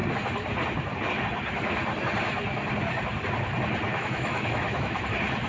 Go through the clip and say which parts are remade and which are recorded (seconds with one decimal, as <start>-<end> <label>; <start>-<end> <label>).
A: 0.0-3.9 recorded; 3.9-5.0 remade; 5.0-5.5 recorded